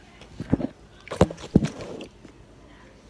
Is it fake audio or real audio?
real